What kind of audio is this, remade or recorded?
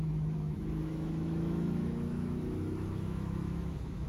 remade